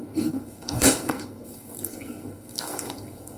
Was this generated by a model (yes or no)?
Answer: yes